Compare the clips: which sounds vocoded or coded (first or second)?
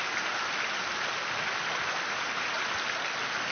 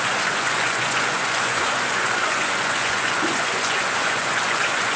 second